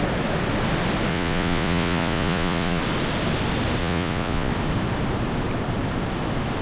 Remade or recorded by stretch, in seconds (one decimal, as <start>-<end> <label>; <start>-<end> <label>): 0.0-1.1 recorded; 1.1-2.8 remade; 2.8-3.8 recorded; 3.8-4.5 remade; 4.5-6.6 recorded

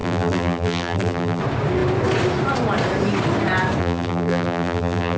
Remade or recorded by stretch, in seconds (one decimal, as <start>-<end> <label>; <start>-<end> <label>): 0.0-1.4 remade; 1.4-3.8 recorded; 3.8-5.2 remade

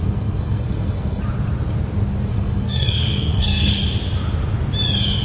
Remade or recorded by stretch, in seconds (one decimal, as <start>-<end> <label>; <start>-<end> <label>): 0.0-1.2 remade; 1.2-2.3 recorded; 2.3-3.7 remade; 3.7-5.2 recorded